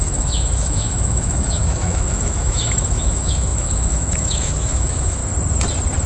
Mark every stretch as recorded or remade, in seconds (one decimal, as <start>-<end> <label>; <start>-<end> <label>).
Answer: 0.0-5.2 remade; 5.2-6.1 recorded